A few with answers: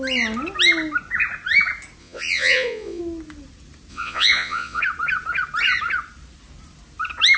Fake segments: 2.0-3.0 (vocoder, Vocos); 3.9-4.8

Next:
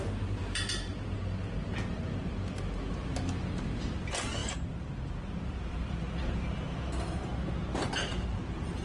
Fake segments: 0.0-0.9 (vocoder, BigVGAN v2); 2.9-8.8

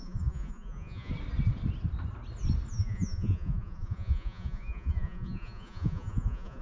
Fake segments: 0.0-1.1 (vocoder, Vocos); 2.7-6.6

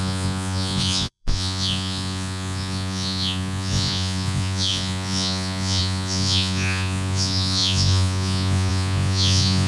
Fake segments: 0.0-9.7 (vocoder, Vocos)

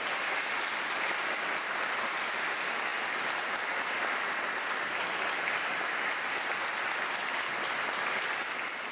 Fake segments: none

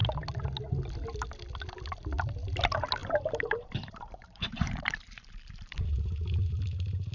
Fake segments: 3.0-7.1 (vocoder, BigVGAN v2)

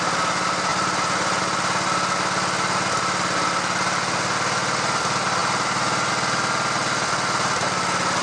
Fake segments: 0.7-1.4 (vocoder, BigVGAN v2)